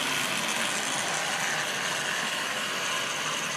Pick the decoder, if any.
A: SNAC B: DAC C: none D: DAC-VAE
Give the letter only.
C